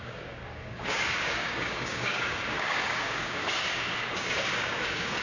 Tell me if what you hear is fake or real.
fake